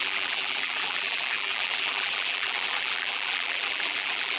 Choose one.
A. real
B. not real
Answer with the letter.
B